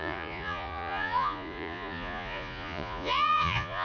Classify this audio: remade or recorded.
remade